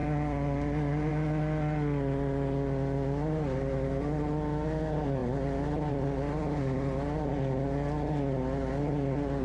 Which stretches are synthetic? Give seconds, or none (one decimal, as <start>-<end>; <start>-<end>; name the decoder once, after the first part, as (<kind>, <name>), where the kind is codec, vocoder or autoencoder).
none